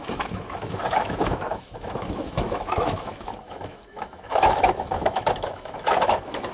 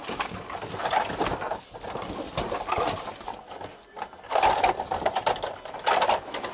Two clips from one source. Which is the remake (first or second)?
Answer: first